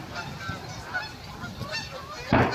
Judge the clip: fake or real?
real